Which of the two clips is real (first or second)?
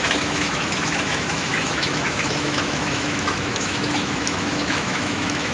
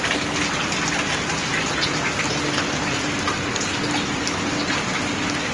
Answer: second